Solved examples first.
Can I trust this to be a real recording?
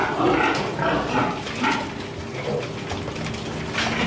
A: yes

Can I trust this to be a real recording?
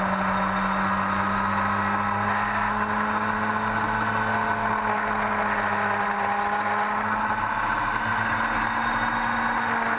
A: yes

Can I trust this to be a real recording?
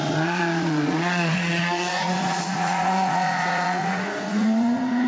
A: no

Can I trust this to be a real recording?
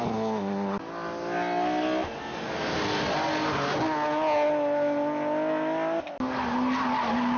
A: yes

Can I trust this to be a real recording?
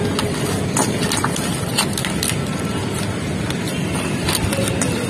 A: yes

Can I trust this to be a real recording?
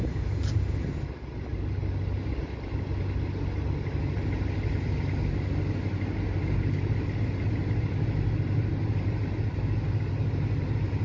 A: yes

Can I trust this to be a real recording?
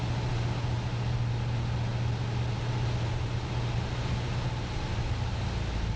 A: yes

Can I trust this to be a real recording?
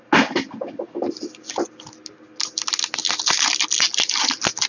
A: yes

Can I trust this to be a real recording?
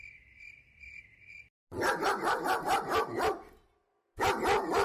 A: yes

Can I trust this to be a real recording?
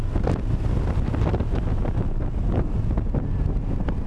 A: yes